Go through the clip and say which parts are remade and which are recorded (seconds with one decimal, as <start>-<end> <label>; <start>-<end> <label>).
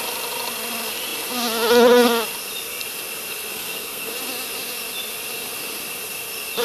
0.0-3.5 recorded; 3.5-4.1 remade; 4.1-6.6 recorded